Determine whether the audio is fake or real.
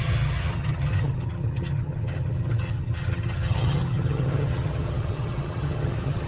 fake